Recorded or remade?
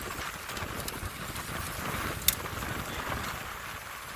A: recorded